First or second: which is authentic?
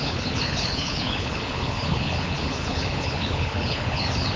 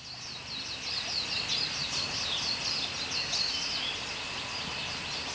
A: second